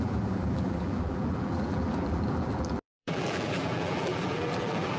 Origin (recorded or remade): remade